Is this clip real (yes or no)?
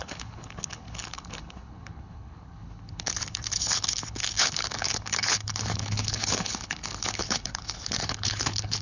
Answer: no